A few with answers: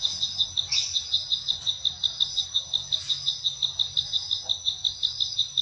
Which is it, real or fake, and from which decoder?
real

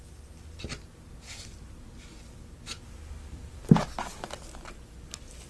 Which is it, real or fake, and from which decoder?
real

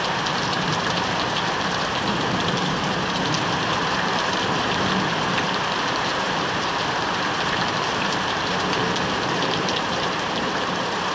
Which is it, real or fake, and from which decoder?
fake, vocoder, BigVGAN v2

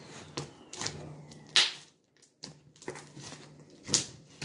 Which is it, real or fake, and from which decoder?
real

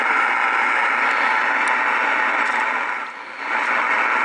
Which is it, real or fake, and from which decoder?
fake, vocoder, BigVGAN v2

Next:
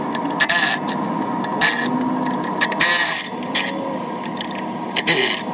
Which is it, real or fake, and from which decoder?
real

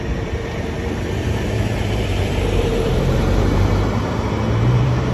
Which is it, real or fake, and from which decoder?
fake, vocoder, BigVGAN v2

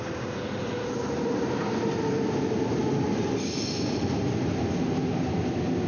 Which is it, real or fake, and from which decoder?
real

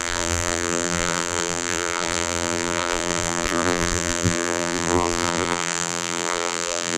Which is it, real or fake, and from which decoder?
fake, vocoder, BigVGAN v2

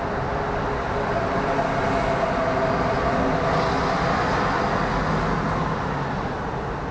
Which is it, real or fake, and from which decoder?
real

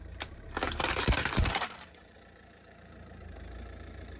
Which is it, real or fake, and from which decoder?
fake, vocoder, BigVGAN v2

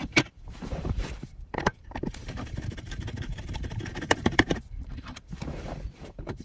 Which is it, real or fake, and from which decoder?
fake, vocoder, BigVGAN v2